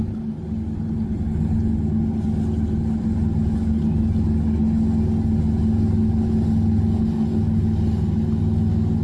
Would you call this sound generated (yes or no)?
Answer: no